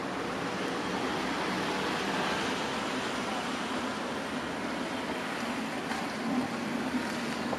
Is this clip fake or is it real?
real